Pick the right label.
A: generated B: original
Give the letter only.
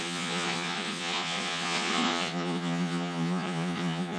A